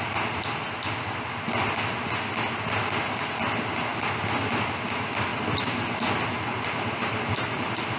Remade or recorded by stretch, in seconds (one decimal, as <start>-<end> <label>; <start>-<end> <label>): 0.0-8.0 recorded